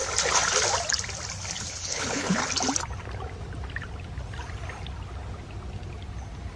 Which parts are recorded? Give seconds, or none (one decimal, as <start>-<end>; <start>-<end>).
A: 0.0-1.7; 2.4-6.6